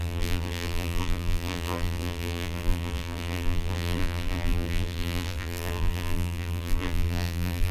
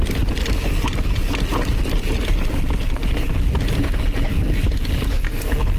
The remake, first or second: first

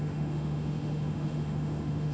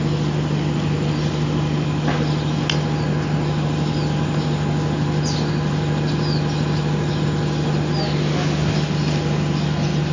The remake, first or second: first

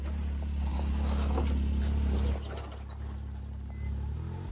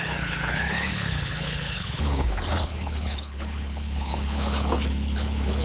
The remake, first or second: second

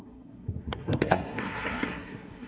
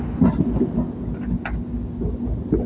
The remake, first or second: first